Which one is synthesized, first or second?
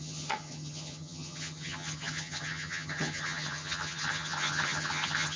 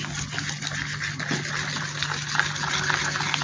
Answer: first